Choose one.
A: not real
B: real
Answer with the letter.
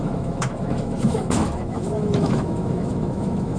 A